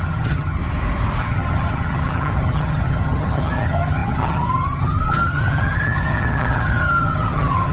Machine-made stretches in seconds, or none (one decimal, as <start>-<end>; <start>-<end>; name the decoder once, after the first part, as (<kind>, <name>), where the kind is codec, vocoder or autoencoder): 0.0-0.6 (vocoder, HiFi-GAN); 1.2-7.7